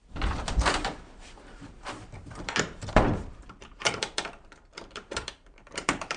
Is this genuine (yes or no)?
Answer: no